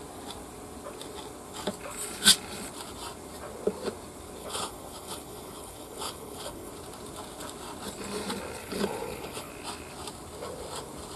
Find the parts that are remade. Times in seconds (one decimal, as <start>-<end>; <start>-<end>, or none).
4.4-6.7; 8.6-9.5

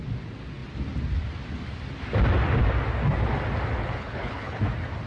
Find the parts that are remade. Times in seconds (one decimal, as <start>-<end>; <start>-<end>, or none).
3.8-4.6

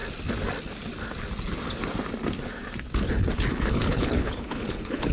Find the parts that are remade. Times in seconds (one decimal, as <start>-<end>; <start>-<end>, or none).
3.1-5.1